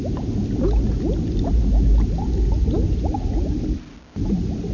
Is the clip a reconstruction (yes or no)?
no